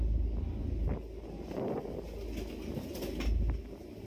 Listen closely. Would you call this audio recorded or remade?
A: recorded